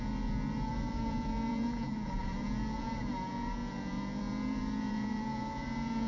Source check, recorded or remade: remade